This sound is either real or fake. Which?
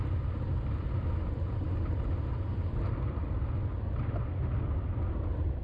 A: real